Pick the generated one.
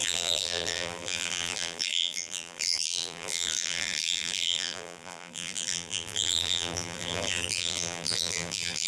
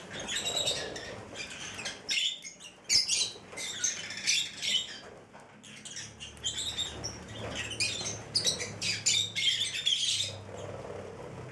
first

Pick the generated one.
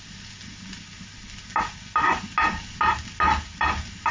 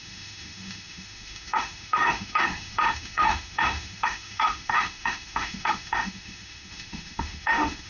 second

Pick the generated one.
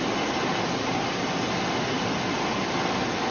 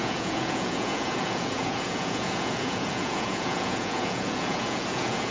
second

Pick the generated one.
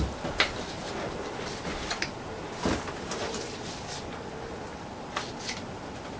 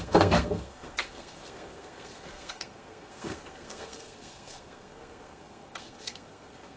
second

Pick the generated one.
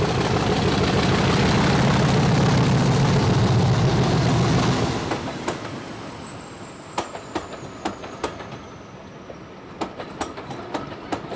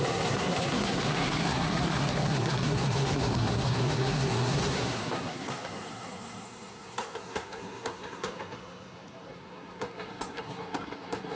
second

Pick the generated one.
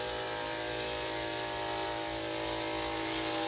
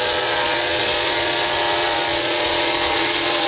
second